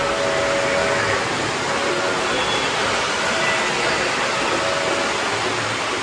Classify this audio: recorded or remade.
recorded